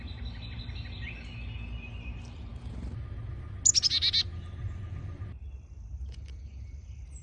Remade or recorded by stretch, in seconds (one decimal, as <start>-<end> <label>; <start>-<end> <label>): 0.0-7.2 recorded